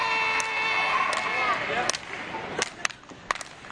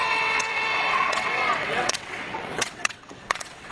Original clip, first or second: first